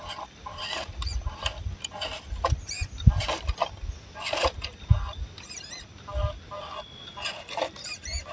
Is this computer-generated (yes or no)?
no